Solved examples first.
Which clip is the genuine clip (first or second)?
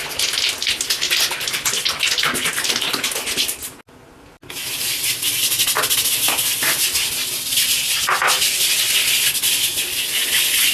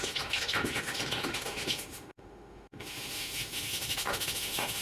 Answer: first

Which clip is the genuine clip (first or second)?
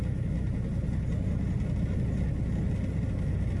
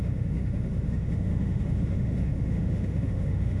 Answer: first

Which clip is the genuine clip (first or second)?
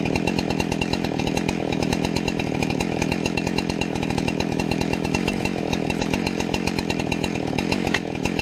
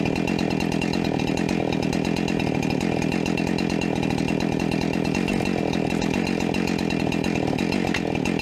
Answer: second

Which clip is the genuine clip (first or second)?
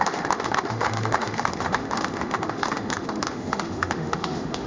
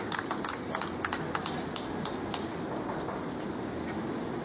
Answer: second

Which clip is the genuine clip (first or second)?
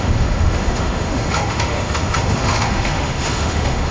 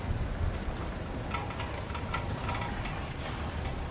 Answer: second